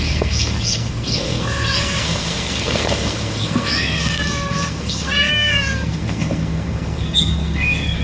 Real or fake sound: fake